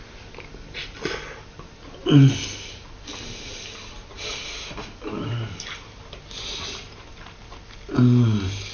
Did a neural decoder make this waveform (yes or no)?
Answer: no